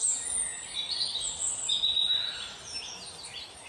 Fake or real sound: real